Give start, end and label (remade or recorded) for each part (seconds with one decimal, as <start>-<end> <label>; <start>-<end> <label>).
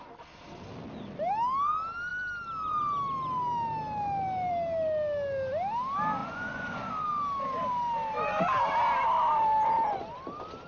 0.0-6.2 recorded; 6.2-6.9 remade; 6.9-10.7 recorded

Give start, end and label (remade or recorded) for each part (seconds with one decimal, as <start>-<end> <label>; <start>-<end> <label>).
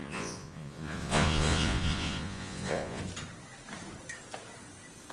0.0-3.0 remade; 3.0-5.1 recorded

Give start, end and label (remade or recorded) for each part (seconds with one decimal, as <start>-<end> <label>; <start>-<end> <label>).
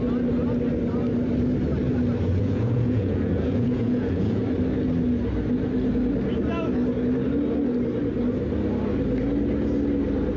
0.0-2.4 recorded; 2.4-4.4 remade; 4.4-10.4 recorded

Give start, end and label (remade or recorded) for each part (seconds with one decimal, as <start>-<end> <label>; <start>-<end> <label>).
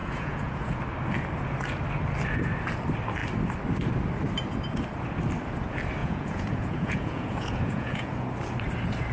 0.0-0.8 remade; 0.8-6.0 recorded; 6.0-8.1 remade; 8.1-9.1 recorded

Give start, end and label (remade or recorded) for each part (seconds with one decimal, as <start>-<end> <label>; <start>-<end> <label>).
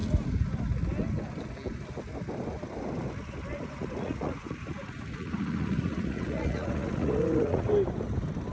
0.0-3.5 recorded; 3.5-7.7 remade; 7.7-8.5 recorded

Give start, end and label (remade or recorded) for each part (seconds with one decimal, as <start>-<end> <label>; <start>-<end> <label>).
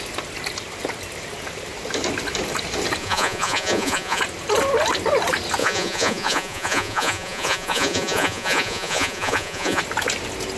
0.0-3.0 recorded; 3.0-4.2 remade; 4.2-5.6 recorded; 5.6-9.8 remade; 9.8-10.6 recorded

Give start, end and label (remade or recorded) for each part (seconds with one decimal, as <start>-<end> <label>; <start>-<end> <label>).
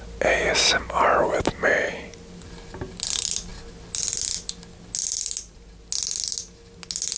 0.0-7.2 recorded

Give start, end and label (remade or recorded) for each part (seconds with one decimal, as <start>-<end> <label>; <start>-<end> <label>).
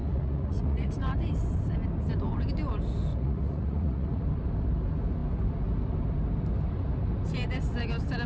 0.0-0.9 remade; 0.9-3.1 recorded; 3.1-4.2 remade; 4.2-8.3 recorded